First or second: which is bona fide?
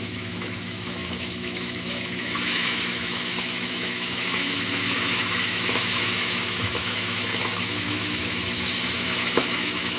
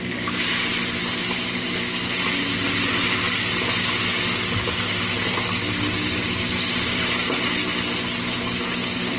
second